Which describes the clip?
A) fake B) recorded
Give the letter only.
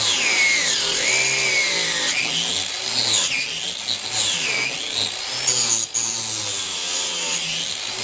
B